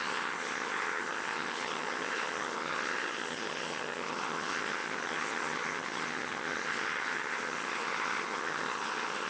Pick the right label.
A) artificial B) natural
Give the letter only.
A